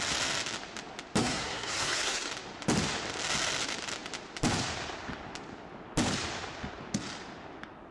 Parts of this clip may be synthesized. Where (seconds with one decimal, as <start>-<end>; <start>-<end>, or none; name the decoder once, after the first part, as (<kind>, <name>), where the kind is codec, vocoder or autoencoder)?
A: 1.2-2.3 (codec, SNAC)